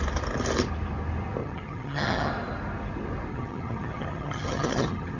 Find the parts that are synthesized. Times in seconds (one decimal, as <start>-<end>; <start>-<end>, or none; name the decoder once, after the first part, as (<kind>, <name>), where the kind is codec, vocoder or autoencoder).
1.4-2.3 (vocoder, HiFi-GAN); 3.3-5.2